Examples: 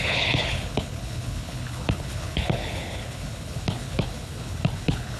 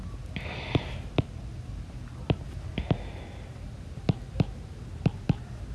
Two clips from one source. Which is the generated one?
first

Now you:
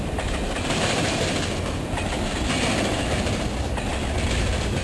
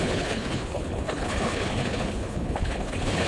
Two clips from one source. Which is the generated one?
second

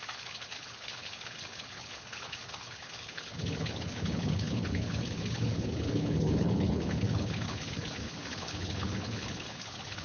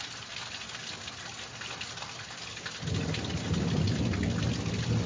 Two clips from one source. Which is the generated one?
first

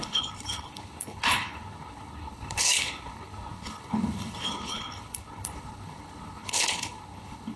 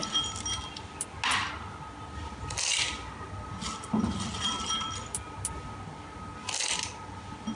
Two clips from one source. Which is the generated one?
first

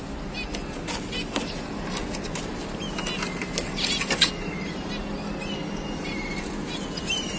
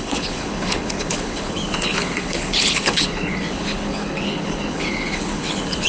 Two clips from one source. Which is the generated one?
second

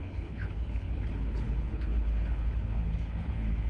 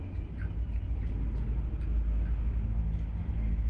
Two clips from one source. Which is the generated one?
first